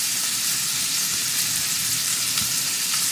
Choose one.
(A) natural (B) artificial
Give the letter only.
B